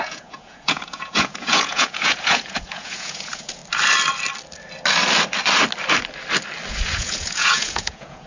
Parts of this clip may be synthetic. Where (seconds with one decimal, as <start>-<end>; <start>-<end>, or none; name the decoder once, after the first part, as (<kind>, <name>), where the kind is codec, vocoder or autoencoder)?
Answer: 0.0-3.6 (vocoder, Vocos); 6.7-8.3